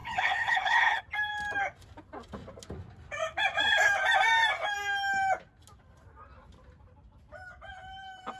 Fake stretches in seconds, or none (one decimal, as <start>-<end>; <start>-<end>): 0.0-1.0